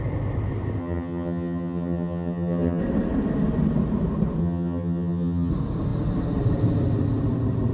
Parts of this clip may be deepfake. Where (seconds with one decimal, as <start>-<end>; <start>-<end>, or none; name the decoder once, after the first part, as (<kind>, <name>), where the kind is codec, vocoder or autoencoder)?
0.8-2.8 (vocoder, HiFi-GAN); 4.4-5.5